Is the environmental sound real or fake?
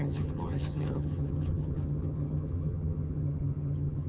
fake